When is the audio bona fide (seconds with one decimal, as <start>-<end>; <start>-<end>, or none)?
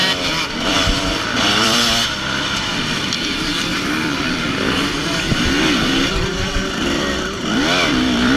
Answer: none